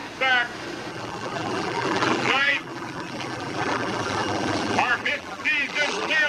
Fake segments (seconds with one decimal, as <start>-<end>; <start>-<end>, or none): 0.9-6.3